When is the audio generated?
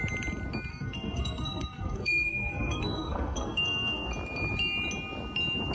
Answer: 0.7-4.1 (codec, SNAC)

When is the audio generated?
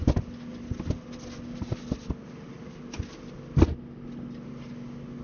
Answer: none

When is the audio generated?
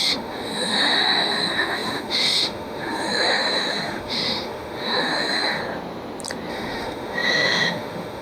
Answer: 0.0-5.6 (autoencoder, DAC-VAE); 6.5-8.2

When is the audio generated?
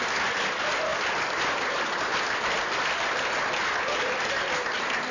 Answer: none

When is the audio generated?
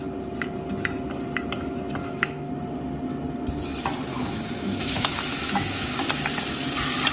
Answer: 2.0-2.5 (autoencoder, DAC-VAE); 4.1-6.0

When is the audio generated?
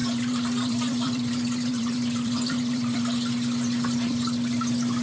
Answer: 0.0-3.0 (vocoder, BigVGAN v2)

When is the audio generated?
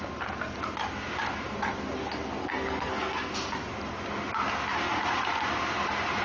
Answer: 2.4-3.3 (codec, SNAC)